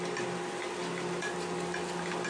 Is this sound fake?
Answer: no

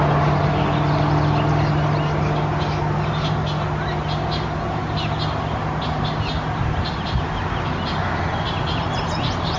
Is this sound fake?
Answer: no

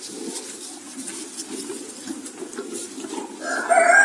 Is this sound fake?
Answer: no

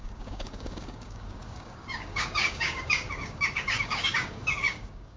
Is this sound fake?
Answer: yes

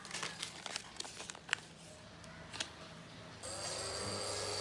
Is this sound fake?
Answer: no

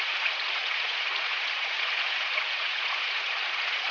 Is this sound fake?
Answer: yes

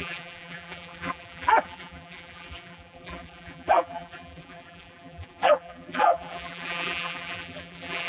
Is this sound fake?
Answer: yes